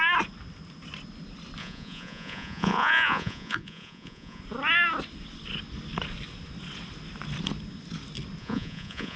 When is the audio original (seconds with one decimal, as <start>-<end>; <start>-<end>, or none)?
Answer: 0.0-1.6; 4.4-8.4